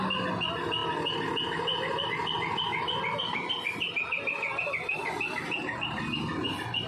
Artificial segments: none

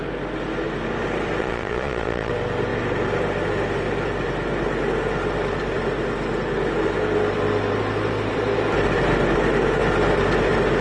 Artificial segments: 1.4-2.3